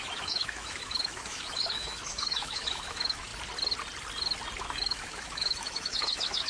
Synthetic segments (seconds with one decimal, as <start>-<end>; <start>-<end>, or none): 0.0-3.3; 4.6-6.5